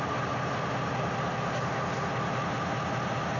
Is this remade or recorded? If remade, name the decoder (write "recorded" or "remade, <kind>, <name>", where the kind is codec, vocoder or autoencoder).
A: recorded